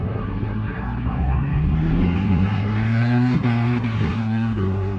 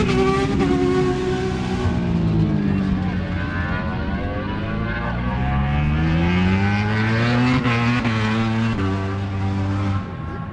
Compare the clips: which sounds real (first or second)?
second